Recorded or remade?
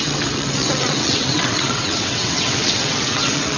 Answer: remade